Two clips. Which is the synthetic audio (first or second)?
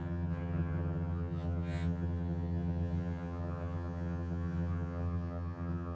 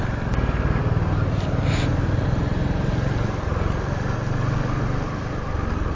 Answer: first